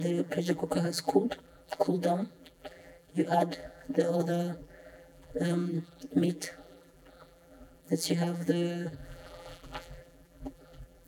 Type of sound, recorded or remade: remade